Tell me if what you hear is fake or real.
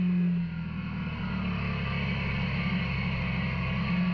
real